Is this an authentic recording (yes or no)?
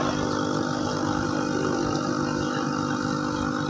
yes